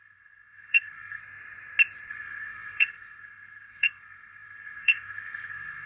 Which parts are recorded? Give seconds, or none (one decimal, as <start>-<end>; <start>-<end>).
1.2-2.1